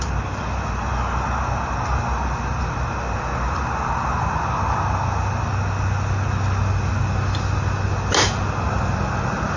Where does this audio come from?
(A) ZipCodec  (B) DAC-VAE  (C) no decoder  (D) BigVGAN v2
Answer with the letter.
C